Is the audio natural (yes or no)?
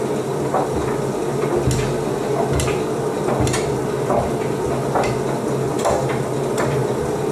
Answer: yes